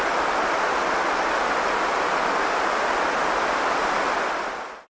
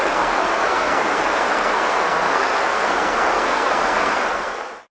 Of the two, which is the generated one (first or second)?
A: second